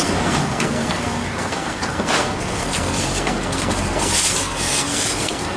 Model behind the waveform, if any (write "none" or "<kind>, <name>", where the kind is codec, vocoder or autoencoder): codec, SNAC